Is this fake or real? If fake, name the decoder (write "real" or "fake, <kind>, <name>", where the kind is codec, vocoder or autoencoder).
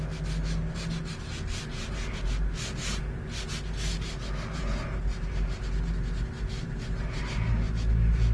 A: real